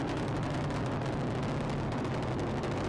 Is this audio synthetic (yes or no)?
no